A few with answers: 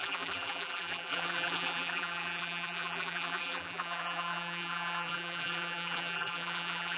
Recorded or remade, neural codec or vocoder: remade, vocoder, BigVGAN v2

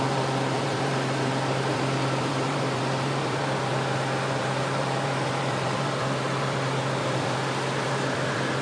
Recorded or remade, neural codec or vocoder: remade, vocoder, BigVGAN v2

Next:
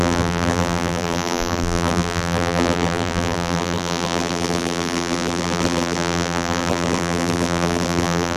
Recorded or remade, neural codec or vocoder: remade, vocoder, BigVGAN v2